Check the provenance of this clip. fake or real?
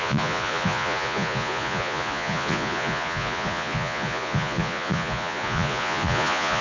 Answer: fake